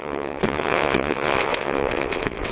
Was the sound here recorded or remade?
remade